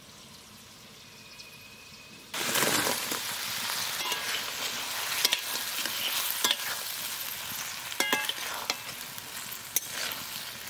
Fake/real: real